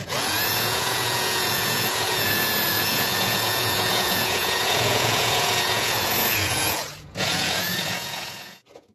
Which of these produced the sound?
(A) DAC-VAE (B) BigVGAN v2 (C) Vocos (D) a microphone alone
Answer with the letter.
C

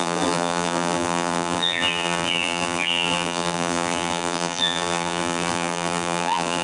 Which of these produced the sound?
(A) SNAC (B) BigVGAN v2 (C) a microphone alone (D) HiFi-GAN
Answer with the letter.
B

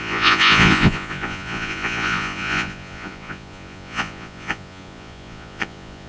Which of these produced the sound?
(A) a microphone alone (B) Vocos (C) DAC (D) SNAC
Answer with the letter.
B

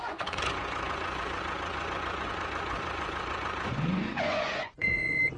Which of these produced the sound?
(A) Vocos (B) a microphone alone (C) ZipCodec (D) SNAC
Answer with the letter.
A